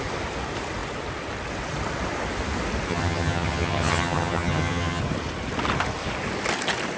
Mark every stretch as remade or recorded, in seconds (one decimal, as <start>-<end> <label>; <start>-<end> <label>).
0.0-2.9 recorded; 2.9-5.0 remade; 5.0-7.0 recorded